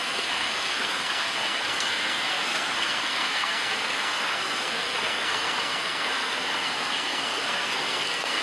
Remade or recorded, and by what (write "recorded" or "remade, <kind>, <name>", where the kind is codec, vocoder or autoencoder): remade, codec, SNAC